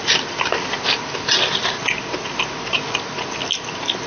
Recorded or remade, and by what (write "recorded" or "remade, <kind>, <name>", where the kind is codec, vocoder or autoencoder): recorded